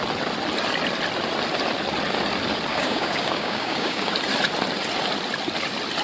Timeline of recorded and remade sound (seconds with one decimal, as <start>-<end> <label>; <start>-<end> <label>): 0.0-2.7 recorded; 2.7-4.1 remade; 4.1-6.0 recorded